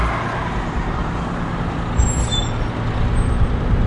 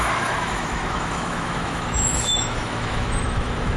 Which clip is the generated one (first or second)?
second